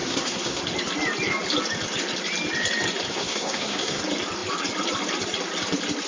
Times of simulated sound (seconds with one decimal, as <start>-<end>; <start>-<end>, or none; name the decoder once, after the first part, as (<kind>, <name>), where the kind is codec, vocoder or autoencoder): 0.0-0.6 (codec, SNAC); 3.1-4.0